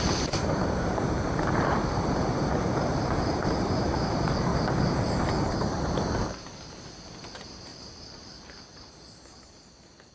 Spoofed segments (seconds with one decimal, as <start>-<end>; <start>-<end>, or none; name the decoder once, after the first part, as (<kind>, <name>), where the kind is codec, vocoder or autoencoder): 0.0-7.7 (vocoder, BigVGAN v2)